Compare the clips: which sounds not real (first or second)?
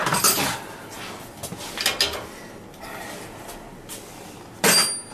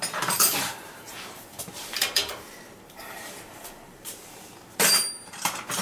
second